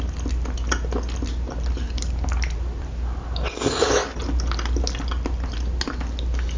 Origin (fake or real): real